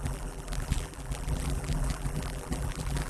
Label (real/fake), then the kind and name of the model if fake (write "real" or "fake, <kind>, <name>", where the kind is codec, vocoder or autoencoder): fake, vocoder, BigVGAN v2